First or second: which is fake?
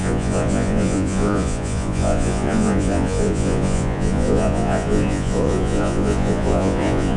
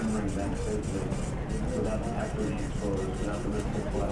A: first